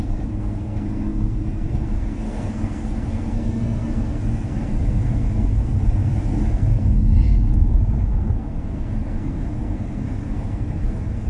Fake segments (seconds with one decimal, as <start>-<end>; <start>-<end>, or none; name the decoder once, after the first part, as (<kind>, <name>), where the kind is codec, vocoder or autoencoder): 0.0-11.3 (codec, SNAC)

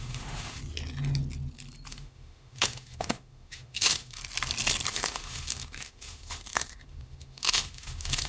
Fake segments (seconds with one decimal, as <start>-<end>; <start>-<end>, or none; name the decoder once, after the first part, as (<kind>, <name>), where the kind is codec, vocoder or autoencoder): 0.0-0.6 (autoencoder, DAC-VAE); 1.9-4.2; 4.9-8.3

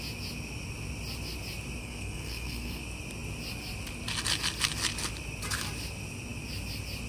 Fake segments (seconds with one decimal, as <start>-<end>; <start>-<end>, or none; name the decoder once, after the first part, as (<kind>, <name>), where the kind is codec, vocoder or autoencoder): 1.8-2.8 (codec, SNAC)

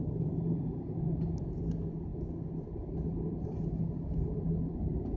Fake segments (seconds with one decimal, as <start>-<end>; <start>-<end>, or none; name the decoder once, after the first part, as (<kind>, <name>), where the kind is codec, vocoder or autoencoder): none

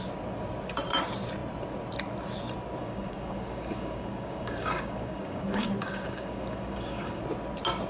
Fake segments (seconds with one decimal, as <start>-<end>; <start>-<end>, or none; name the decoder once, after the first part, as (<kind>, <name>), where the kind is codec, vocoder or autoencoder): 2.8-7.2 (codec, DAC)